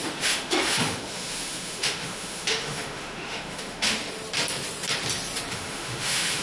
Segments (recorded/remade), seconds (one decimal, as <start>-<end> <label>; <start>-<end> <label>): 0.0-4.0 remade; 4.0-5.5 recorded; 5.5-6.4 remade